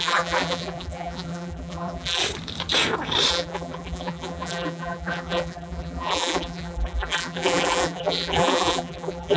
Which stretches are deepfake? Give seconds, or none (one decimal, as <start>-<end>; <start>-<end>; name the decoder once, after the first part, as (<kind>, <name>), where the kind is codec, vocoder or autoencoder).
0.0-2.2 (vocoder, BigVGAN v2); 3.3-9.4